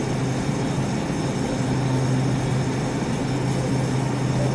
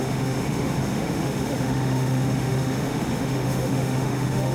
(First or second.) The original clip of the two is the first